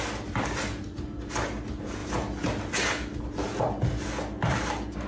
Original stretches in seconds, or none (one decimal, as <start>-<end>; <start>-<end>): 0.0-5.1